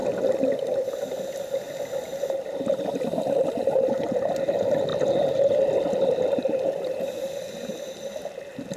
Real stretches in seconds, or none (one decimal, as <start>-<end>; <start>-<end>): 0.0-1.1; 4.9-5.8